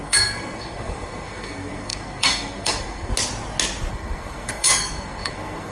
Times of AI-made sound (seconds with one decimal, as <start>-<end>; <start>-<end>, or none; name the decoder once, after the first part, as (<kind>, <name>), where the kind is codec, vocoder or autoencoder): 0.0-3.1 (codec, SNAC); 3.9-5.7